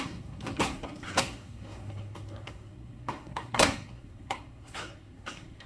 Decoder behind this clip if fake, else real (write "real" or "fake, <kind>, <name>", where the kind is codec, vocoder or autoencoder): fake, codec, SNAC